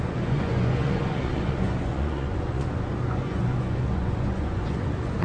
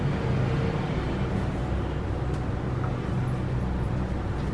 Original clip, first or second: second